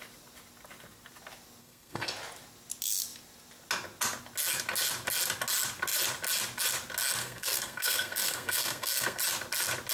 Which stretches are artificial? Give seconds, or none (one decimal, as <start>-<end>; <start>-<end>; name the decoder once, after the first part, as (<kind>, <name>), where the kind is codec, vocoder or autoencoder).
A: 1.6-2.1 (codec, SNAC); 7.2-9.2